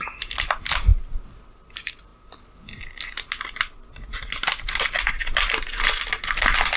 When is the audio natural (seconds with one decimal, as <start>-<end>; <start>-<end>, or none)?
0.0-6.8